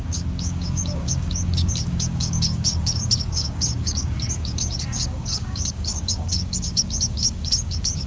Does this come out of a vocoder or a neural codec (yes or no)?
yes